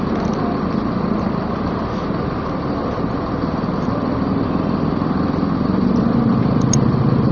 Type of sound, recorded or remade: recorded